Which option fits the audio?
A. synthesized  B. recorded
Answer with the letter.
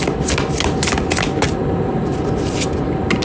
B